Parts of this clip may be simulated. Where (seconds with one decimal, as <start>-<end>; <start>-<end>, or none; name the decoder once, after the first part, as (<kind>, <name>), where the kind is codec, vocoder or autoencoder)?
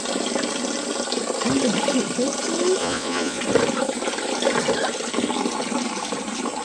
2.8-3.4 (vocoder, Vocos)